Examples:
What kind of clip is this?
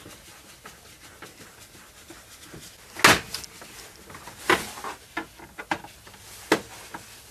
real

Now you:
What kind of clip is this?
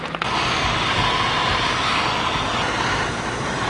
real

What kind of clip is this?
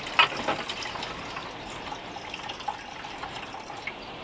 real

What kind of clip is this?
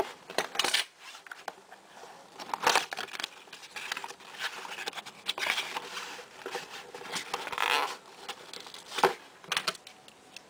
real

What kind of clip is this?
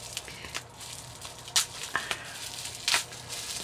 real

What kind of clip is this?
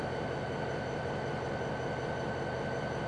real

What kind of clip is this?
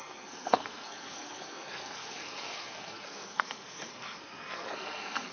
fake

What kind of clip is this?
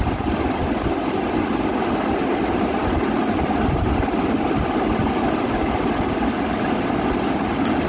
real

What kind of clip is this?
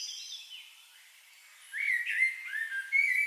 real